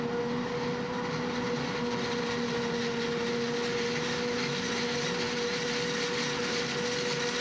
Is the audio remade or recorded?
recorded